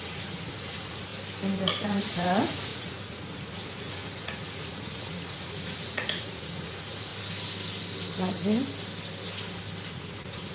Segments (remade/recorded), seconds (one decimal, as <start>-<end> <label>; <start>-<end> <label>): 0.0-1.1 remade; 1.1-2.0 recorded; 2.0-7.1 remade; 7.1-9.9 recorded; 9.9-10.5 remade